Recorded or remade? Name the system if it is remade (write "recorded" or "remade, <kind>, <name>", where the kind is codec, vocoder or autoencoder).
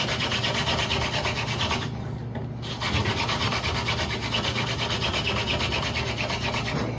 recorded